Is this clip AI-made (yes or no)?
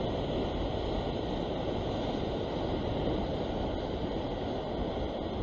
no